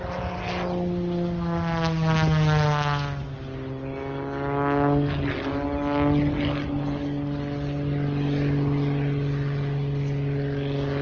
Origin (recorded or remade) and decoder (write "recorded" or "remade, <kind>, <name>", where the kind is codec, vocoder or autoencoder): recorded